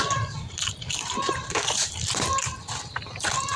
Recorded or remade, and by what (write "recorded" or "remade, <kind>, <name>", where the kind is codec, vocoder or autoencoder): recorded